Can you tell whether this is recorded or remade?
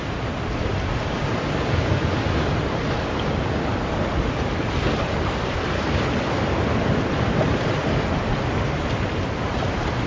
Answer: recorded